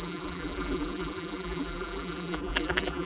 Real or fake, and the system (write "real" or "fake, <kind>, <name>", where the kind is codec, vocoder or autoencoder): fake, vocoder, BigVGAN v2